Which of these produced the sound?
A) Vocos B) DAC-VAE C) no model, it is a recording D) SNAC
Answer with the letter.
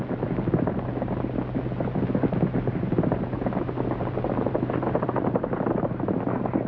C